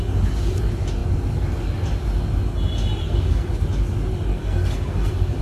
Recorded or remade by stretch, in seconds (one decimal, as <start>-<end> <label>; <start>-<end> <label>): 0.0-3.0 recorded; 3.0-3.5 remade; 3.5-4.3 recorded; 4.3-5.4 remade